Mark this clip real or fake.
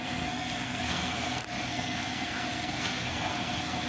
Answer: fake